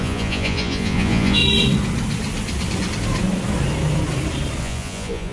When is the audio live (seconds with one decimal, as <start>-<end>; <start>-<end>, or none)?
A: 1.4-4.6